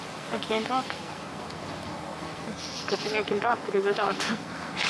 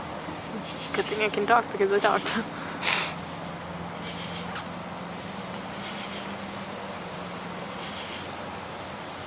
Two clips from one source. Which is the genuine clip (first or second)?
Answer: second